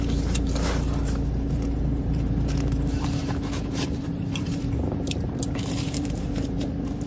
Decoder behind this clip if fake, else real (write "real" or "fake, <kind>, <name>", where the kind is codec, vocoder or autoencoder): fake, vocoder, BigVGAN v2